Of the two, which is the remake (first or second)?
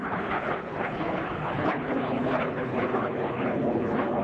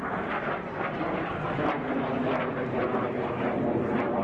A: first